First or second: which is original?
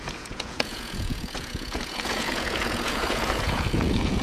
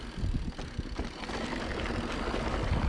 second